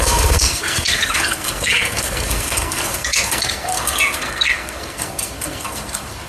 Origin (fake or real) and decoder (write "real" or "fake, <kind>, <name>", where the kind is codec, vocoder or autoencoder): fake, codec, SNAC